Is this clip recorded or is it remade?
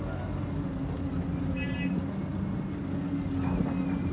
recorded